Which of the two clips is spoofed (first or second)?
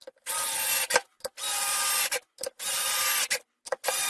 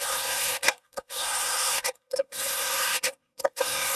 second